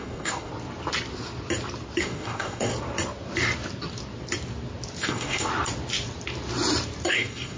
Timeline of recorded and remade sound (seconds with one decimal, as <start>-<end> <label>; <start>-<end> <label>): 0.0-0.5 remade; 0.5-2.0 recorded; 2.0-2.7 remade; 2.7-5.0 recorded; 5.0-5.5 remade; 5.5-7.1 recorded; 7.1-7.6 remade